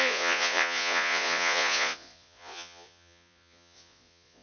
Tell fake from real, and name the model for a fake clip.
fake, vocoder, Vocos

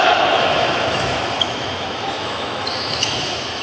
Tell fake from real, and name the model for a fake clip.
fake, autoencoder, DAC-VAE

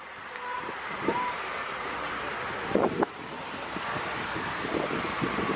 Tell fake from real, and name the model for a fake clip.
real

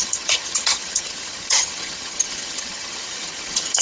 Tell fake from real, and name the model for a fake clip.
fake, vocoder, HiFi-GAN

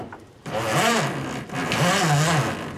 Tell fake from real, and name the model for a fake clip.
real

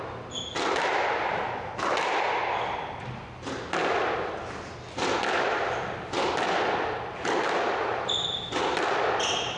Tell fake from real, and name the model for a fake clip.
real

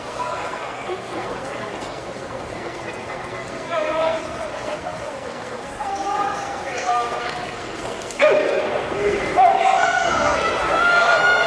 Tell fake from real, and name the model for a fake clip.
fake, codec, SNAC